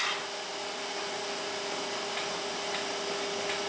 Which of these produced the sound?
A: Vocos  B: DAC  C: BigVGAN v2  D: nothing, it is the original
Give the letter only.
D